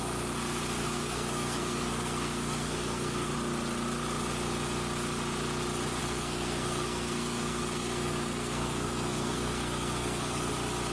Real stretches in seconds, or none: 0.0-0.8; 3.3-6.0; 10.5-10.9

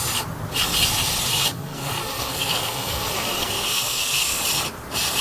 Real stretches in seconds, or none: 0.0-1.3; 4.4-5.2

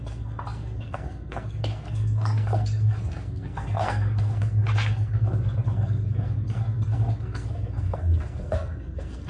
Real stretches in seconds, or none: none

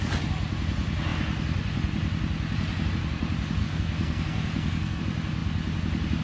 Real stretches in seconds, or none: 0.0-3.6; 5.0-6.2

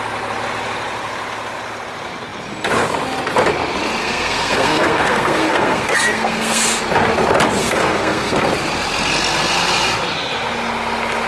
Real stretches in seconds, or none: 0.0-4.0; 6.8-7.6; 8.5-11.3

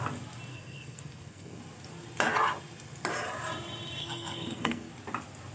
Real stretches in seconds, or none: 0.0-0.5; 1.6-4.0; 4.9-5.5

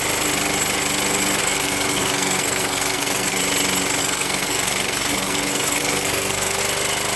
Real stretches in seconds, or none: 0.0-1.4; 3.4-4.0; 6.6-7.2

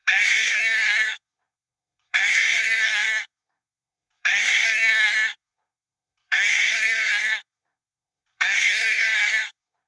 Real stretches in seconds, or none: none